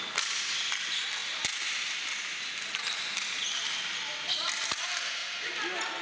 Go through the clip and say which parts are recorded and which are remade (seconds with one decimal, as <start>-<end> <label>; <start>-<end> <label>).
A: 0.0-6.0 recorded